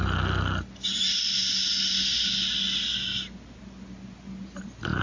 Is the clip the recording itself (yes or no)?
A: yes